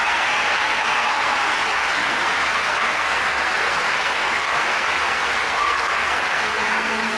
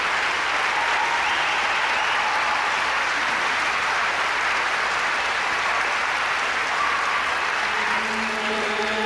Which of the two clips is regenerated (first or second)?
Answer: first